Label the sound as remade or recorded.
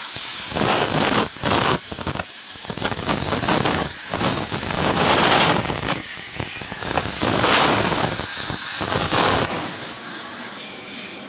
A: remade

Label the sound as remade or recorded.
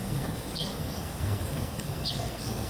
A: remade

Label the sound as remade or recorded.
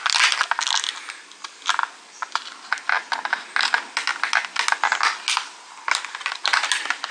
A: recorded